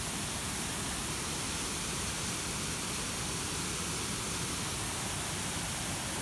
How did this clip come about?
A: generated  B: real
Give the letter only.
B